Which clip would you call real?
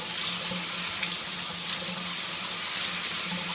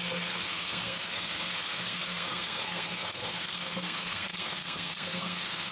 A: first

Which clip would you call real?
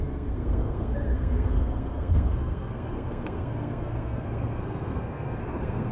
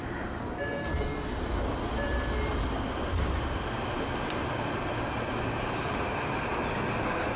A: second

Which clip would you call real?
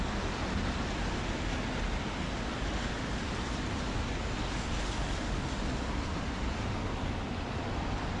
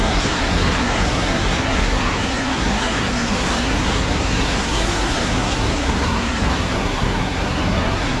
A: first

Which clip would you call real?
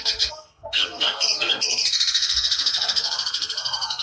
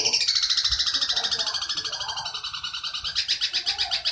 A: second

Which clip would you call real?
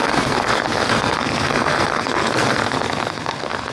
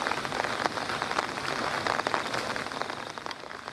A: second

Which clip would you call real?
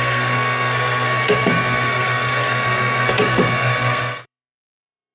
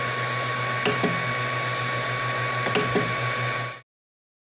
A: second